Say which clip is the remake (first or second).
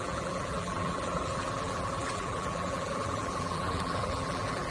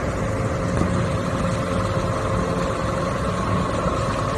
first